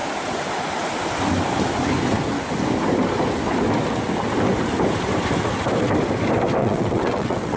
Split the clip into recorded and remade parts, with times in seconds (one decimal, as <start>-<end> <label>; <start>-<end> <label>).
0.0-6.6 recorded; 6.6-7.6 remade